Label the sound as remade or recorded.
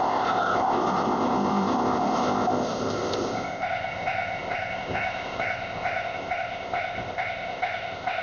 remade